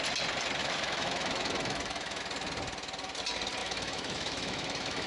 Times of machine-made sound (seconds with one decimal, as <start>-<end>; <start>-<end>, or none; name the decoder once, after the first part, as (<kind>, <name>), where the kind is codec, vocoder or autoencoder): 0.6-2.2 (autoencoder, DAC-VAE); 3.6-5.1